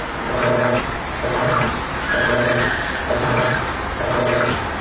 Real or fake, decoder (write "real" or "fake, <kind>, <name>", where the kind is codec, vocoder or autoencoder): real